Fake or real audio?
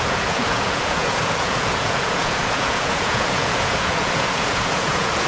fake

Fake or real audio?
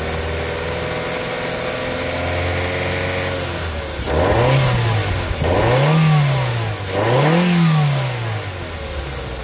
real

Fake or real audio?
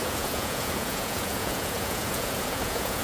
fake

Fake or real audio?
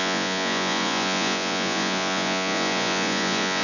fake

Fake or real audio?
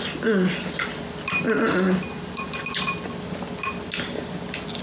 real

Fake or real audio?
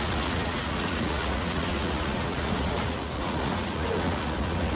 fake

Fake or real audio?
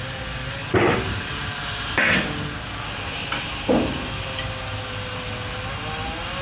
real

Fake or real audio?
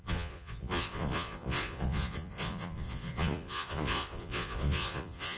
fake